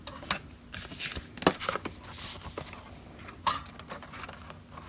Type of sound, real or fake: real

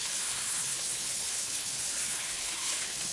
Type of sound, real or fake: fake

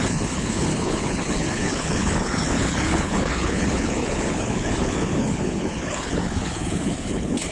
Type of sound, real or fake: fake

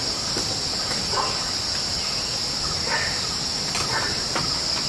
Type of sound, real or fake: real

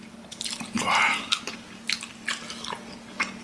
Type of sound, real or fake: real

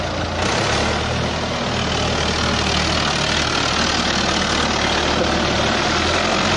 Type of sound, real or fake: real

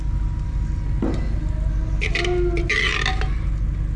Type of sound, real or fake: real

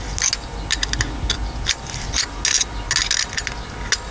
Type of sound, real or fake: real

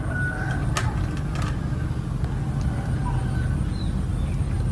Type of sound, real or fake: real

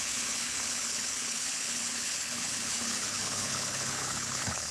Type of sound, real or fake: fake